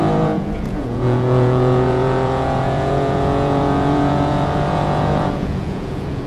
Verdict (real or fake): fake